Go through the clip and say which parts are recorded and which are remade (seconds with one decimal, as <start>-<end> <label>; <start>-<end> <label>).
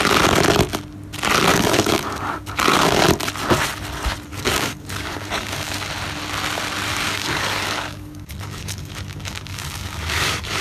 0.0-1.5 recorded; 1.5-3.0 remade; 3.0-4.3 recorded; 4.3-5.9 remade; 5.9-6.9 recorded; 6.9-10.6 remade